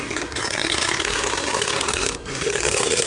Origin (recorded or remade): remade